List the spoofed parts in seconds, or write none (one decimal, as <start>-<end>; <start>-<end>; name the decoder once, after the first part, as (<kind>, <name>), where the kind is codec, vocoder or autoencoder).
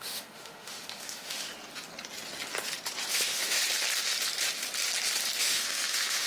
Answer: 0.0-1.5 (autoencoder, DAC-VAE); 3.1-3.6; 5.4-6.3